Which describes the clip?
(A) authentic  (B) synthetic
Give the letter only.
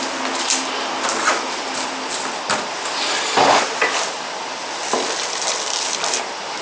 A